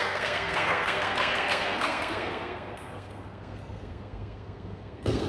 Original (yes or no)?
no